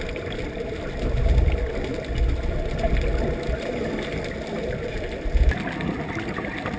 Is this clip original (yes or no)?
yes